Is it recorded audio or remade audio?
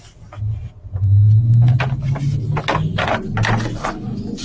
recorded